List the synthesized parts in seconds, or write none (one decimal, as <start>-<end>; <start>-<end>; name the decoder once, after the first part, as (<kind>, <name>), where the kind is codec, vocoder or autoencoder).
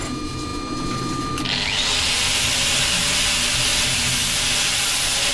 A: none